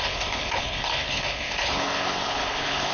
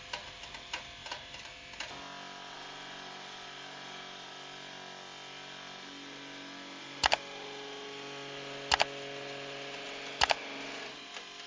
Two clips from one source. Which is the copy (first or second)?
first